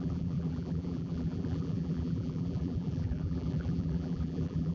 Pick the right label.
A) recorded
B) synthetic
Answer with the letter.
B